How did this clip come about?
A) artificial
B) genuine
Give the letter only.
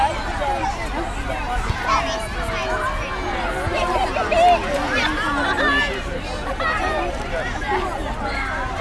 B